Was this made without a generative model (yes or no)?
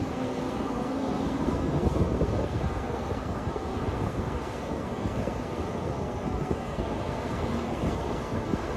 no